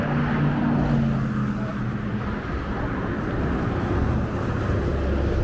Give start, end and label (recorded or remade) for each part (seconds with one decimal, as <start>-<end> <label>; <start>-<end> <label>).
0.0-5.4 recorded